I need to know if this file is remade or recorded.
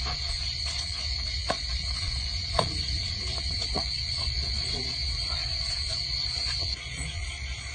remade